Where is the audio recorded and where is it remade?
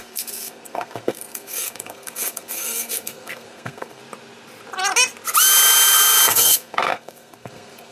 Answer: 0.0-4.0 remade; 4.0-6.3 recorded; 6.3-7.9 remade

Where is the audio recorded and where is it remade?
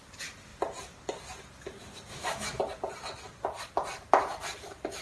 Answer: 0.0-2.1 recorded; 2.1-2.6 remade; 2.6-5.0 recorded